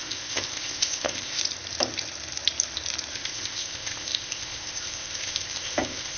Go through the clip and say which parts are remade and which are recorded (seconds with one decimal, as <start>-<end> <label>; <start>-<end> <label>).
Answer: 0.0-1.4 remade; 1.4-3.1 recorded; 3.1-6.2 remade